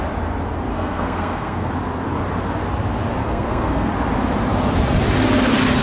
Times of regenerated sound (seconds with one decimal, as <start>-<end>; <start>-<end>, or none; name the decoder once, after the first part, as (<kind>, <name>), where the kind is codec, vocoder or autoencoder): 0.7-1.7 (codec, SNAC); 3.2-3.9